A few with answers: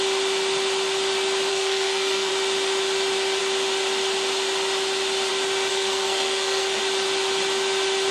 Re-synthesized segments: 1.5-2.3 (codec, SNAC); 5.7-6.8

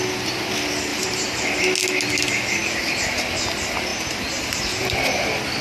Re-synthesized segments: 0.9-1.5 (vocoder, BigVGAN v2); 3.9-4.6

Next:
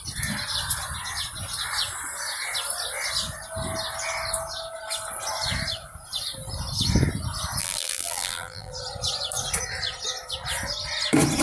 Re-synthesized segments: 7.6-8.7 (vocoder, BigVGAN v2)

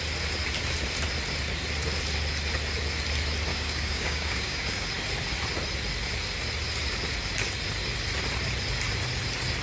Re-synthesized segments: 3.5-4.9 (codec, DAC)